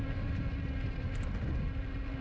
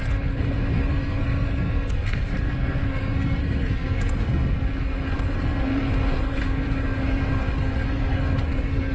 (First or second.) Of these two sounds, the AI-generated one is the second